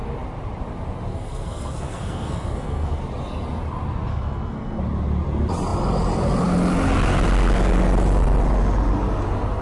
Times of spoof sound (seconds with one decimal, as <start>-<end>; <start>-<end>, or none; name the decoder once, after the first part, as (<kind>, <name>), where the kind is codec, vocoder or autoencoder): 1.1-3.0 (codec, SNAC); 4.1-4.8